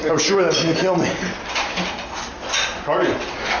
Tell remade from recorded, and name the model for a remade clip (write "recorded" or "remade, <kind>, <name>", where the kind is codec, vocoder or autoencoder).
recorded